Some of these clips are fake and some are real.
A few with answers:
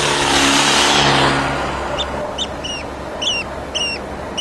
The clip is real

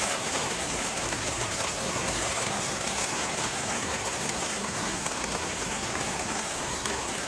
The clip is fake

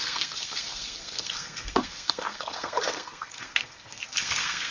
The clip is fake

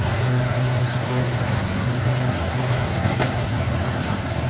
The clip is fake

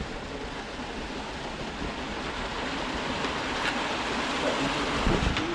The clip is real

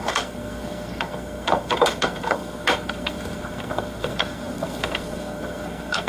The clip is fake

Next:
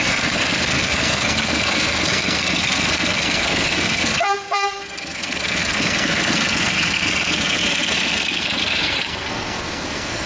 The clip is fake